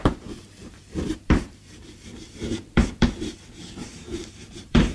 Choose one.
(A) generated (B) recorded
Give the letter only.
A